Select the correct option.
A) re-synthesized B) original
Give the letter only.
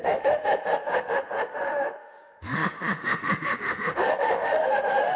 A